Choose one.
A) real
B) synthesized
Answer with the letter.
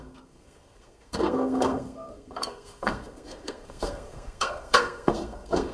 B